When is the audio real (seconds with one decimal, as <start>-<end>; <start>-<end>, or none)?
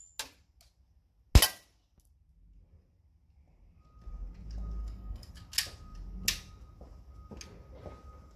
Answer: 0.0-4.8; 5.3-8.4